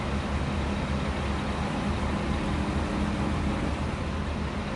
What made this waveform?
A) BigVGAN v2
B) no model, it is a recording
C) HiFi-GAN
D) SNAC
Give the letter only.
B